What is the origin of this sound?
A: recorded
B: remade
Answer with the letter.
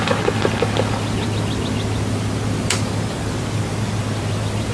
A